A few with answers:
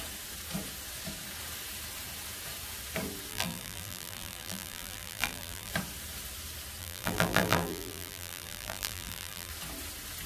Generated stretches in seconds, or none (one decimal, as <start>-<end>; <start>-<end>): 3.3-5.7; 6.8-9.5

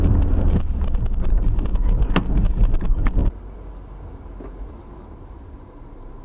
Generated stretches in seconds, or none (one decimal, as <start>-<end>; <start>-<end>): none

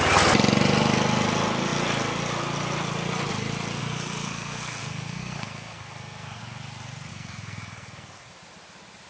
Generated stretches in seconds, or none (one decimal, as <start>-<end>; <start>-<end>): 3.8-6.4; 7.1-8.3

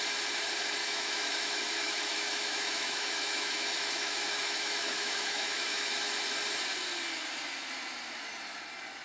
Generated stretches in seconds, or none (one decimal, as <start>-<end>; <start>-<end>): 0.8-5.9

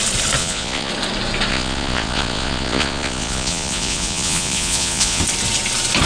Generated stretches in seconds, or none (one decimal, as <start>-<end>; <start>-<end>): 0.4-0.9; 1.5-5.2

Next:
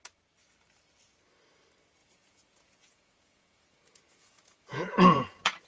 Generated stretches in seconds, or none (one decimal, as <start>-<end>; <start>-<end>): 2.0-5.7

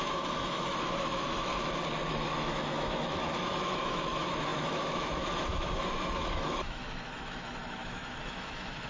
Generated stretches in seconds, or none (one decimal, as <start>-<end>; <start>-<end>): 0.0-1.5; 2.1-8.9

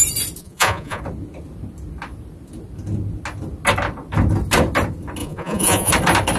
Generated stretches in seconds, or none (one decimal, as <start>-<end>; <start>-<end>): 0.4-1.0; 5.2-5.9